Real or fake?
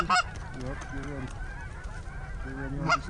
real